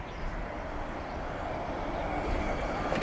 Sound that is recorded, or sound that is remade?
recorded